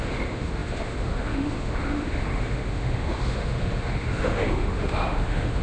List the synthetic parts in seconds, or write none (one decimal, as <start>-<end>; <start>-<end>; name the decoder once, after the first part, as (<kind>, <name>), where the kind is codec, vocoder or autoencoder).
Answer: 0.0-5.6 (autoencoder, DAC-VAE)